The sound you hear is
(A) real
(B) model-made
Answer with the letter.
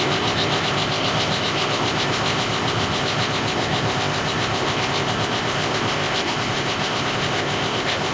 B